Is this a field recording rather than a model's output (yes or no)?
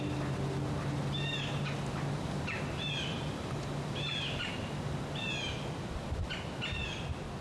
yes